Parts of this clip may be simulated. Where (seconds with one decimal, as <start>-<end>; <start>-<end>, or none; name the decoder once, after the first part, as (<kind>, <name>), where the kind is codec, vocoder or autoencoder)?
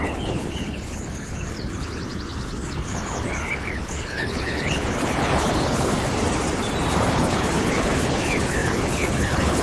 0.0-5.9 (codec, HILCodec); 7.1-9.6